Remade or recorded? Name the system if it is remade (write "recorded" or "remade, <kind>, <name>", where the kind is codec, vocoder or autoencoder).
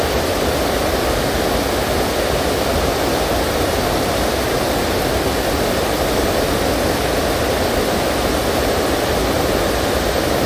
recorded